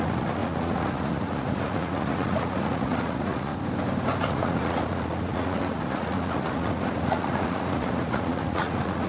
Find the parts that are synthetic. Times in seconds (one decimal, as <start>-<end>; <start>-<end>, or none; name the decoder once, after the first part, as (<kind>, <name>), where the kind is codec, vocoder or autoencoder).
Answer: 0.0-3.5 (vocoder, Vocos); 4.2-9.1